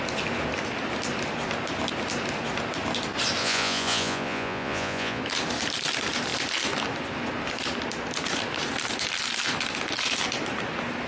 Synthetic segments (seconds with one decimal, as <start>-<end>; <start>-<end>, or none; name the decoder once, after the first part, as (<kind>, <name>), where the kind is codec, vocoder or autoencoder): 3.4-5.2 (vocoder, Vocos)